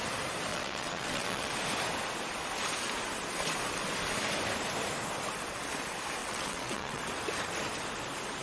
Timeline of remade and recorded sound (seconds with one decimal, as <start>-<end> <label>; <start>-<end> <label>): 0.0-0.5 recorded; 0.5-1.5 remade; 1.5-6.2 recorded; 6.2-7.0 remade; 7.0-8.4 recorded